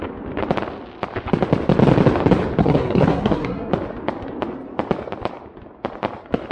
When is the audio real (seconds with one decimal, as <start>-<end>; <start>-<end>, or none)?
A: 0.0-2.6; 3.7-6.5